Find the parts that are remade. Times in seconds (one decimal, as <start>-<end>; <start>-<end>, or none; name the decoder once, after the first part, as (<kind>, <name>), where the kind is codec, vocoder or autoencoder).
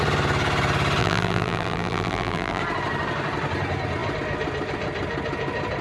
1.0-2.6 (vocoder, BigVGAN v2)